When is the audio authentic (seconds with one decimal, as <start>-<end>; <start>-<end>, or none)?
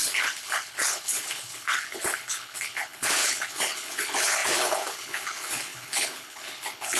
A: none